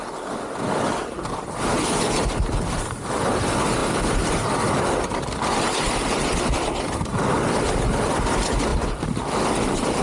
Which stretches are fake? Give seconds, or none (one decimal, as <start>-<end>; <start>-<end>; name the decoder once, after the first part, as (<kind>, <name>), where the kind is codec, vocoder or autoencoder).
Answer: 8.7-10.0 (vocoder, BigVGAN v2)